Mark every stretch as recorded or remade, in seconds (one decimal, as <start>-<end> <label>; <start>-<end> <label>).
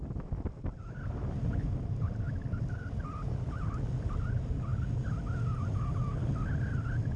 0.0-7.2 recorded